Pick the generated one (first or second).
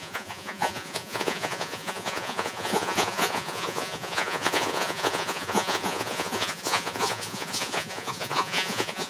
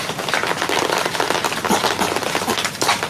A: first